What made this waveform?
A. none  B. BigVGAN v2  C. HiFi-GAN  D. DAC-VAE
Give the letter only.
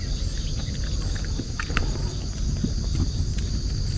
A